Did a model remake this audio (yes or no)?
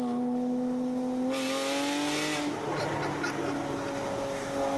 no